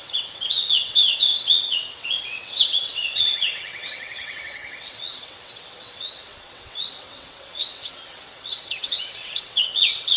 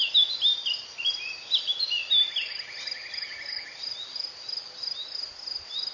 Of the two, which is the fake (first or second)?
first